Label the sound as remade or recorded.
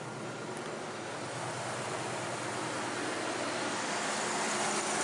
recorded